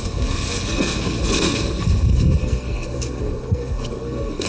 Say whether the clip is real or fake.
fake